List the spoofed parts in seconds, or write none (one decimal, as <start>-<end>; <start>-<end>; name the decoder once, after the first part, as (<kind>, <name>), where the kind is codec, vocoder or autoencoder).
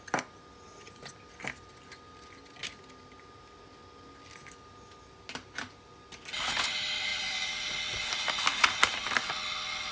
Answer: none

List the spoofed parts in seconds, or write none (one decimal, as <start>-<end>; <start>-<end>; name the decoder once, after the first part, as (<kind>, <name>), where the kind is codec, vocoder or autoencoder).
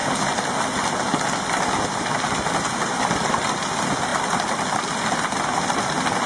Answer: none